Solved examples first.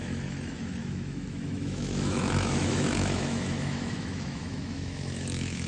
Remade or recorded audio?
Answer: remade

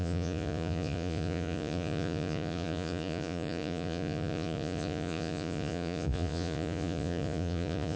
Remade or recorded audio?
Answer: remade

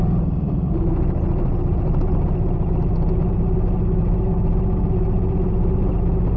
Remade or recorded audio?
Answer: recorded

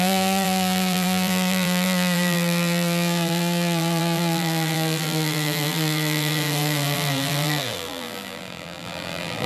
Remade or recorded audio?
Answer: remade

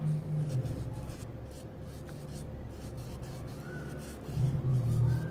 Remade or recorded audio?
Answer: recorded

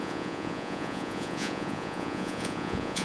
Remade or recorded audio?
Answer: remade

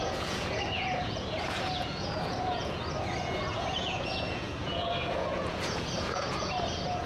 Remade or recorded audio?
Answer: remade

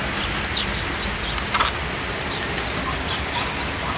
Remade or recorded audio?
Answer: recorded